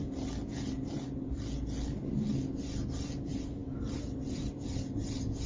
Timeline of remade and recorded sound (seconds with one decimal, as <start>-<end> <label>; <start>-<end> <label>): 0.0-5.5 recorded